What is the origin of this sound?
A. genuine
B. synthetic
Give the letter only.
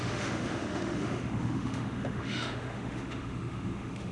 B